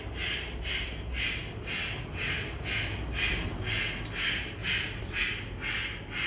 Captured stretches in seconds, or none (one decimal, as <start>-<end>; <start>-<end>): 0.0-6.3